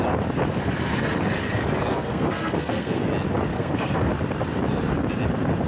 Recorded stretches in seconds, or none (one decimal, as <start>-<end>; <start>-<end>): 0.0-1.9; 3.0-3.5; 4.1-5.7